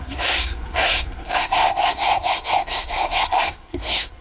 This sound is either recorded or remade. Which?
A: remade